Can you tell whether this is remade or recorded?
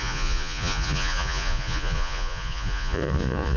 remade